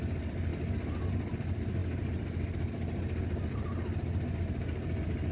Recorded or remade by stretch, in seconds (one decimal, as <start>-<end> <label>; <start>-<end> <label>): 0.0-5.3 recorded